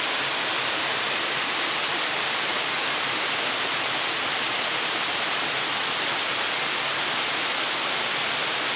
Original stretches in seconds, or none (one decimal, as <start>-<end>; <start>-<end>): 0.0-6.9; 8.0-8.8